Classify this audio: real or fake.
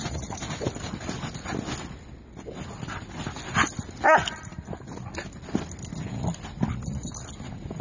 real